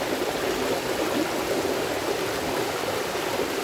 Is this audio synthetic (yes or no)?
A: no